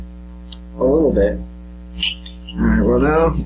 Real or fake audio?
real